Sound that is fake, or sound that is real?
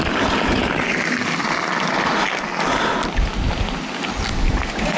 real